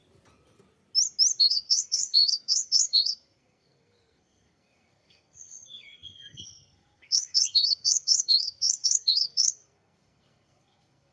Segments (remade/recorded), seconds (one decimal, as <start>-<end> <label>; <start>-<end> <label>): 0.0-1.4 recorded; 1.4-11.1 remade